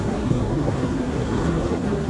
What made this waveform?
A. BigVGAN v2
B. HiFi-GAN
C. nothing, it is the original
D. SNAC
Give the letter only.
D